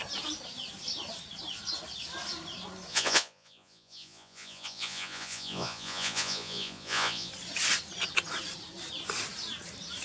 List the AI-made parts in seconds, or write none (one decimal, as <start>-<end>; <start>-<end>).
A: 2.9-7.3